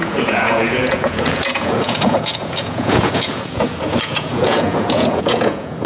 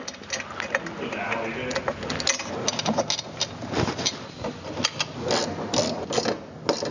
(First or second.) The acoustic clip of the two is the second